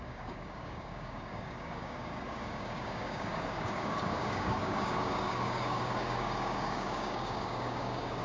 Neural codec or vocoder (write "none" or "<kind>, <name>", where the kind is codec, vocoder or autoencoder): codec, DAC